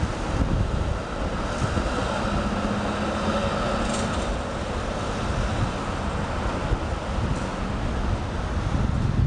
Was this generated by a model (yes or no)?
no